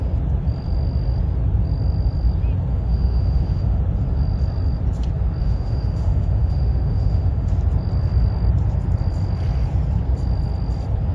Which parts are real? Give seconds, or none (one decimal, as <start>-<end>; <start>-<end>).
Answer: 0.0-2.7; 3.8-5.4; 7.5-11.1